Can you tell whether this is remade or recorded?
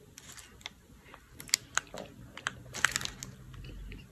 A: recorded